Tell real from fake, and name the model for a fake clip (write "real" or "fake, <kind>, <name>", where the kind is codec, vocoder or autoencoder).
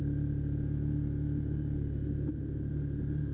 real